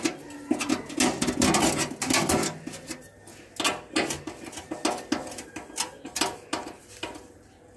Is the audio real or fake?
real